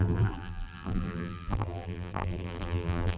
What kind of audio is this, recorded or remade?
remade